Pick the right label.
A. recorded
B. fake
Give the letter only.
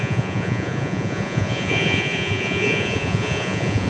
B